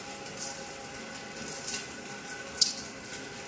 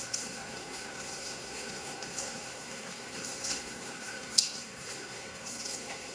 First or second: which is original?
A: first